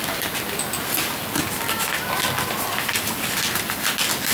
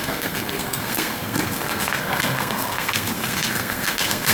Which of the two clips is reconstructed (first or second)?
second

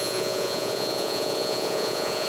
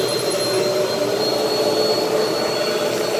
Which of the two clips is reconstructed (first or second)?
first